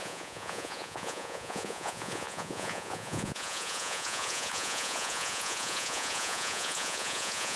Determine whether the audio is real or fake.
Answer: fake